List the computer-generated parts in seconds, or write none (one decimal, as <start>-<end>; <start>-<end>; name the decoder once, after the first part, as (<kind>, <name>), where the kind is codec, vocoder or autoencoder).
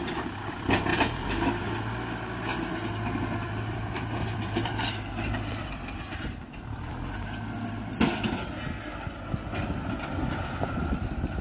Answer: 0.9-1.6 (vocoder, BigVGAN v2); 2.5-6.9